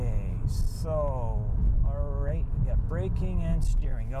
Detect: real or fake real